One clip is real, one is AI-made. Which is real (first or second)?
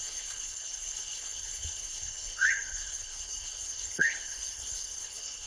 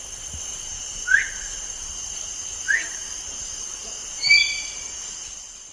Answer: second